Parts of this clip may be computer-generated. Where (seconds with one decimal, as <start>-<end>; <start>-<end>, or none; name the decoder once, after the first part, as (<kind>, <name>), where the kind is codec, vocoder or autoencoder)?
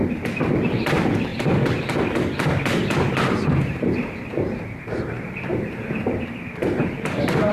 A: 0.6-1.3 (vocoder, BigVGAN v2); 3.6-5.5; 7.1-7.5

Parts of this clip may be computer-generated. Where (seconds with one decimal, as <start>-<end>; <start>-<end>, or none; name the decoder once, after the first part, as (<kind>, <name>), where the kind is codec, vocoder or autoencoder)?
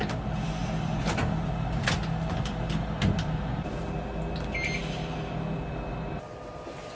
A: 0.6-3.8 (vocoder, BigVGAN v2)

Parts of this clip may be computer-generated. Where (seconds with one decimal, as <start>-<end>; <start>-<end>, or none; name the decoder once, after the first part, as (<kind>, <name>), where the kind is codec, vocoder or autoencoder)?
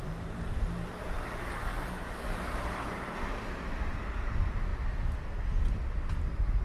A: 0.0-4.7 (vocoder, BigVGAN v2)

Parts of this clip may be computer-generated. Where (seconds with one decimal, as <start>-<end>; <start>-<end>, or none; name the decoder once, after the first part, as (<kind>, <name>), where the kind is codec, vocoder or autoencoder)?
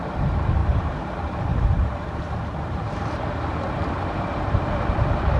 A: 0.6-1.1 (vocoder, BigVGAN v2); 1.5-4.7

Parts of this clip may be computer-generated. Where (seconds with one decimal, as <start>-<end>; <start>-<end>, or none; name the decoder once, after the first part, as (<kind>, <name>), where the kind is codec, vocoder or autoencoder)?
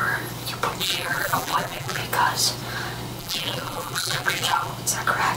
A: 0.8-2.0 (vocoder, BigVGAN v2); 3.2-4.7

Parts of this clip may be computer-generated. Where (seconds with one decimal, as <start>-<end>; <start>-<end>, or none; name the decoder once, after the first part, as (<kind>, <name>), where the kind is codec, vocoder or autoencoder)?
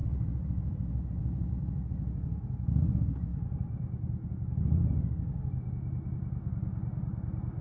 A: 0.0-1.5 (vocoder, BigVGAN v2); 3.3-4.3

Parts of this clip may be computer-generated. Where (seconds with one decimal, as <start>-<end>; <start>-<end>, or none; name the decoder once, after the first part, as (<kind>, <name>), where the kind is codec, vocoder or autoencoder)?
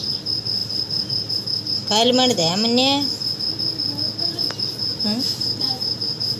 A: 4.9-6.4 (vocoder, BigVGAN v2)